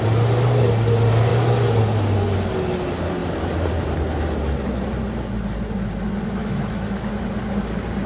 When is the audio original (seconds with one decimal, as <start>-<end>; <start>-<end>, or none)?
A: 0.0-6.4; 7.1-8.1